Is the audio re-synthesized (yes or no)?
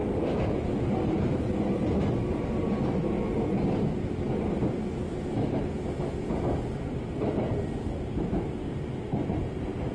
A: no